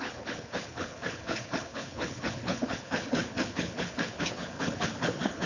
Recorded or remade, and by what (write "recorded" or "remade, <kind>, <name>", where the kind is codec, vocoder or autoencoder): remade, codec, HILCodec